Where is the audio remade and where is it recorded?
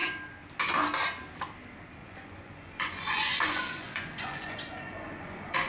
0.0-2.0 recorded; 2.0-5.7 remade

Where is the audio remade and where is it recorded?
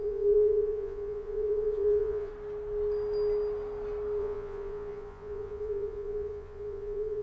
0.0-2.3 remade; 2.3-4.2 recorded; 4.2-7.2 remade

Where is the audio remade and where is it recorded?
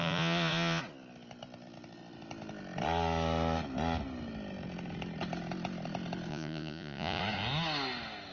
0.0-0.8 remade; 0.8-6.3 recorded; 6.3-7.2 remade; 7.2-8.3 recorded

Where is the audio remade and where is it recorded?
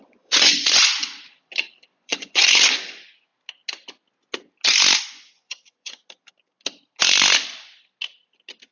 0.0-1.0 remade; 1.0-1.9 recorded; 1.9-3.3 remade; 3.3-5.1 recorded; 5.1-6.0 remade; 6.0-8.7 recorded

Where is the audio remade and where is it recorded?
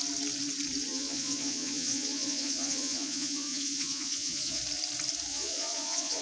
0.0-0.9 recorded; 0.9-4.6 remade; 4.6-5.3 recorded; 5.3-6.2 remade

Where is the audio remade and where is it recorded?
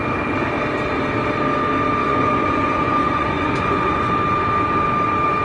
0.0-2.0 recorded; 2.0-4.1 remade; 4.1-5.4 recorded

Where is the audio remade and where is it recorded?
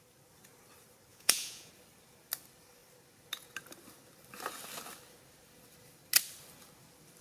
0.0-1.1 recorded; 1.1-1.7 remade; 1.7-7.2 recorded